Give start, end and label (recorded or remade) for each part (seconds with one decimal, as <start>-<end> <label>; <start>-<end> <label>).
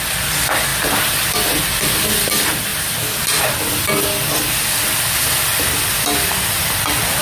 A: 0.0-7.2 recorded